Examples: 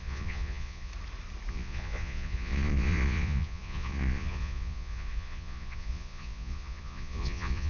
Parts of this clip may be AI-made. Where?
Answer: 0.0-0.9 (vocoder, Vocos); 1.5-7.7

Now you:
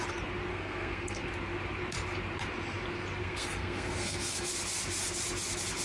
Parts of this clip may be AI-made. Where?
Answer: 0.5-1.3 (codec, SNAC); 3.2-4.5

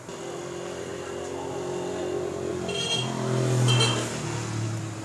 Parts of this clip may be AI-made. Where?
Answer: none

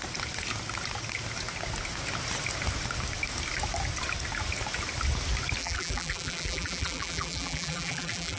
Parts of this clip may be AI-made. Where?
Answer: 5.6-8.4 (vocoder, BigVGAN v2)